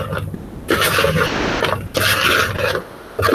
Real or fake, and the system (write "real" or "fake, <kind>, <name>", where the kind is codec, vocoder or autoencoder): real